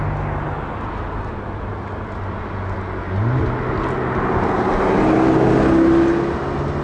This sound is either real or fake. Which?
real